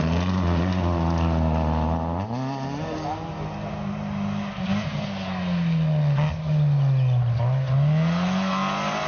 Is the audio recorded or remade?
recorded